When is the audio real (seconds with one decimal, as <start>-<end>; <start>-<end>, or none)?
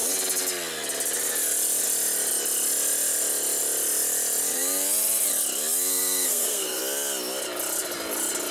0.0-5.9; 6.8-8.5